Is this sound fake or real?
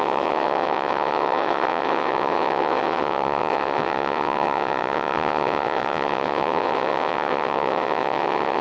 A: fake